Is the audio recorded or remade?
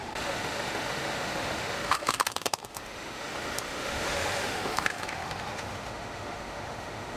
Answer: remade